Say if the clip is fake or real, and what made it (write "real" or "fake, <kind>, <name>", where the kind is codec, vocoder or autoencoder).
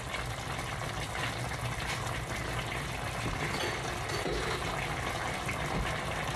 real